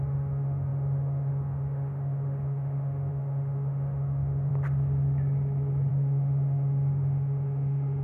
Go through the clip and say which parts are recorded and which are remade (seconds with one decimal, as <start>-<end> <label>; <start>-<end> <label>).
0.0-4.5 remade; 4.5-5.9 recorded; 5.9-8.0 remade